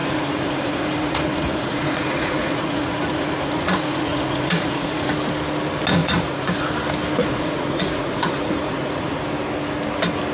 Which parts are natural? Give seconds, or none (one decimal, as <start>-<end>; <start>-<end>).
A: 5.1-6.0; 6.7-7.2; 9.2-10.3